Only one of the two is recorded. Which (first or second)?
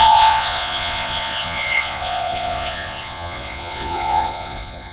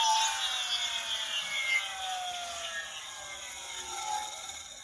second